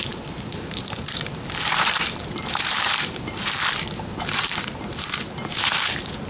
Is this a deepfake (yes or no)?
yes